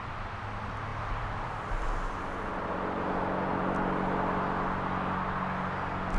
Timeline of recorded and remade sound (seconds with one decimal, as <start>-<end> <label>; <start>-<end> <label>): 0.0-0.9 recorded; 0.9-1.7 remade; 1.7-6.2 recorded